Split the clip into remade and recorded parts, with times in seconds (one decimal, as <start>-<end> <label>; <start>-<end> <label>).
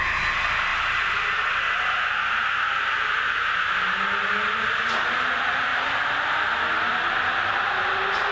0.0-8.3 recorded